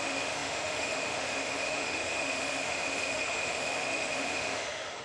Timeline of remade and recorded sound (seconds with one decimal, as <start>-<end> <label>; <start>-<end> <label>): 0.0-5.0 remade